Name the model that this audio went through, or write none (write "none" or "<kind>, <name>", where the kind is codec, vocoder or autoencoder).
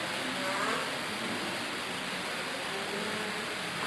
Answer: none